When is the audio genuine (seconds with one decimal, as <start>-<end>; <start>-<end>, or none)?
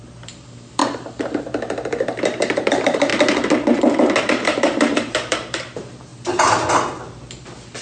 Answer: 0.8-1.4; 3.1-4.2; 6.1-7.8